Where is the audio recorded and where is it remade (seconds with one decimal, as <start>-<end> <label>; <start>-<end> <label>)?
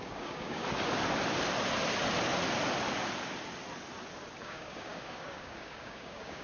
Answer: 0.0-0.6 remade; 0.6-4.4 recorded; 4.4-6.4 remade